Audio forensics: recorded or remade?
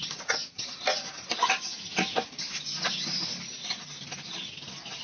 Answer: recorded